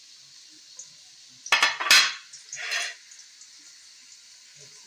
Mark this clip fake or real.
real